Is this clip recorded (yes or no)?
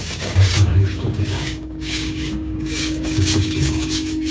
no